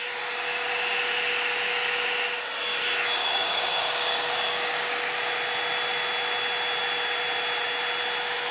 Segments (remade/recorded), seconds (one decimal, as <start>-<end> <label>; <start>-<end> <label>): 0.0-3.2 recorded; 3.2-5.1 remade; 5.1-8.5 recorded